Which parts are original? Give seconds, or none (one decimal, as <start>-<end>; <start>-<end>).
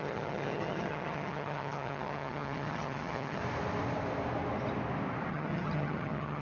3.4-5.3